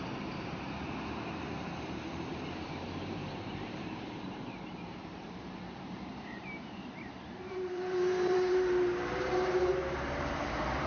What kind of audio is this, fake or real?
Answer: fake